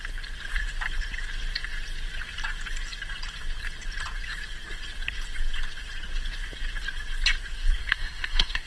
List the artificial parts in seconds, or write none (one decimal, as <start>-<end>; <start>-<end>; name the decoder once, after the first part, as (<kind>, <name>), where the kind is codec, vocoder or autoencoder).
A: 7.8-8.7 (codec, SNAC)